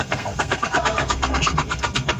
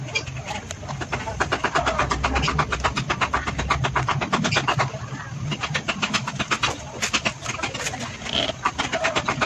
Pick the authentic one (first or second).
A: second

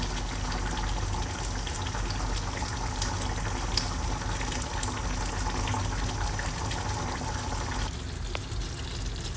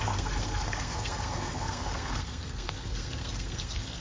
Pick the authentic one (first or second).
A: first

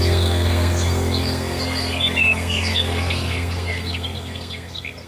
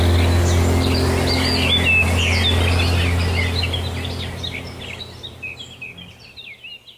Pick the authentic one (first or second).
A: second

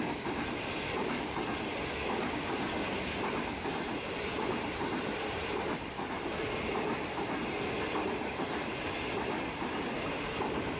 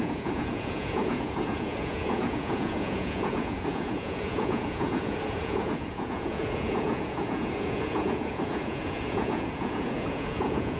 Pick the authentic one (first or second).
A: first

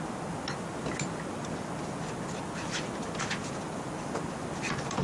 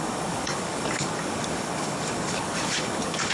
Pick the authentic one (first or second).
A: first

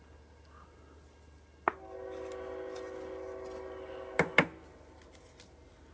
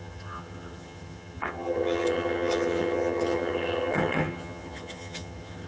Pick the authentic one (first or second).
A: first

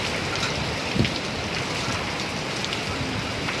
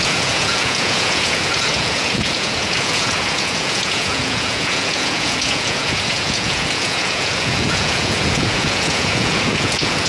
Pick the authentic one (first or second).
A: first